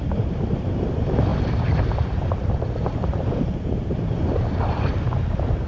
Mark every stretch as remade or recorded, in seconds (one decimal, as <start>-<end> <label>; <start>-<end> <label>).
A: 0.0-5.7 remade